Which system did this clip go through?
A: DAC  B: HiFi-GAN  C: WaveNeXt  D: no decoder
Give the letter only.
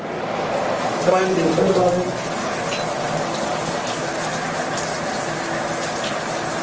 D